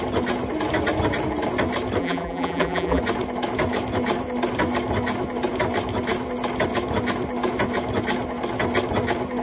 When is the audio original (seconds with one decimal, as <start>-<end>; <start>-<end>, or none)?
0.0-2.0; 3.0-9.4